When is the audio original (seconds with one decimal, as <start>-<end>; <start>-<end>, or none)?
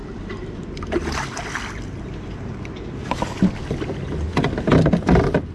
0.0-5.5